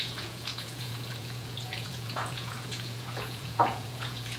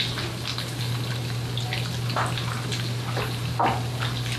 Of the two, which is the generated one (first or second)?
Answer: first